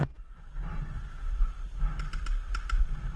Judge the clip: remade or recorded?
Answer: recorded